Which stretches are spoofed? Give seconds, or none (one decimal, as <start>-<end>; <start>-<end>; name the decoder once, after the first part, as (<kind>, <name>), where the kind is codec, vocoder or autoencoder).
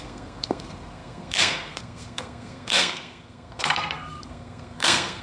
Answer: 0.0-5.2 (codec, SNAC)